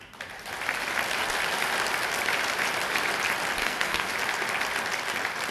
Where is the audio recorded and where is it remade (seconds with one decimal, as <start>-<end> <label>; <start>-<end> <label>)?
0.0-3.6 recorded; 3.6-4.1 remade; 4.1-5.5 recorded